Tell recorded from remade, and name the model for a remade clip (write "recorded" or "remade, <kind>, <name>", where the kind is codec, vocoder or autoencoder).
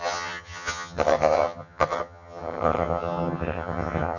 remade, vocoder, HiFi-GAN